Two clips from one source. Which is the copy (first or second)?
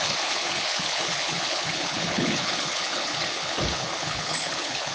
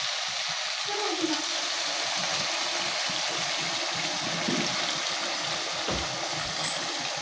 first